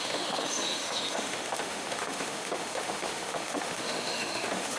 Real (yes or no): no